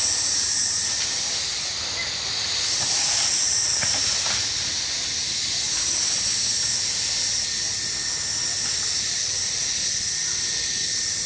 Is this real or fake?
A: real